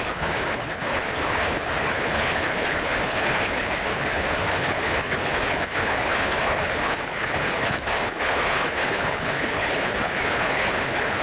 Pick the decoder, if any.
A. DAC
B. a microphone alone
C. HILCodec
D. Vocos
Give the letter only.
C